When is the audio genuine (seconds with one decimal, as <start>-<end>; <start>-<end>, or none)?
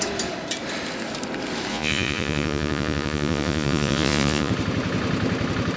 0.0-1.7; 4.5-5.8